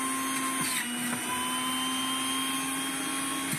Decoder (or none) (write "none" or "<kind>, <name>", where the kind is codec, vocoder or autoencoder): none